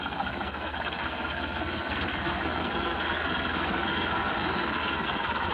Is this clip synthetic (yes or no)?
yes